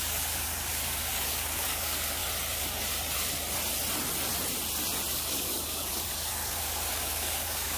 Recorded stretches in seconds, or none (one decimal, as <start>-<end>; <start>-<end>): 2.2-5.1

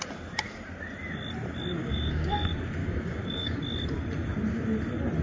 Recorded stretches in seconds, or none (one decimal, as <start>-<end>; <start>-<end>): 0.0-1.8; 2.3-2.8; 3.6-5.2

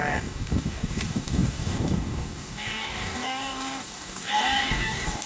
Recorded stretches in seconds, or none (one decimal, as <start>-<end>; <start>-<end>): none

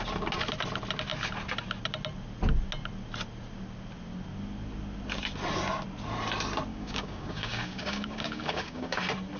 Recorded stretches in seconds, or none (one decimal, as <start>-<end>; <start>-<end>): 0.0-6.7; 9.0-9.4

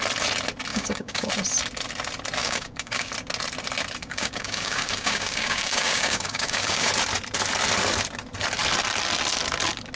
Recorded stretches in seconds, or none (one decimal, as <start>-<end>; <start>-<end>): 0.0-0.7; 1.3-2.4; 3.1-4.0; 6.9-10.0

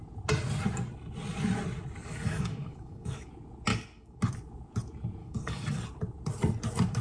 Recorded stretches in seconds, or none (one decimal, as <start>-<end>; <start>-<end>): 0.0-2.0; 3.3-3.7; 4.2-5.2; 5.8-7.0